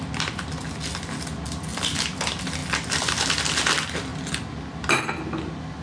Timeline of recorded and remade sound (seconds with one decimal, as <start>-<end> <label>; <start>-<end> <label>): 0.0-5.8 recorded